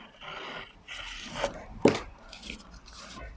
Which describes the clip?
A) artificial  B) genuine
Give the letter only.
B